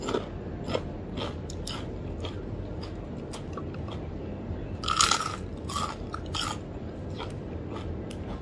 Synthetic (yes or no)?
no